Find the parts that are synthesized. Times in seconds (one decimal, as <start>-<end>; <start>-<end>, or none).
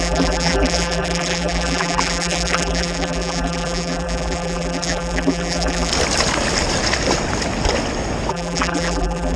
0.0-5.9; 8.3-9.4